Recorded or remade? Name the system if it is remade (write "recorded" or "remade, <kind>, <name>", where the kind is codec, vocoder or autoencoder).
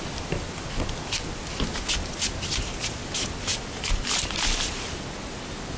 recorded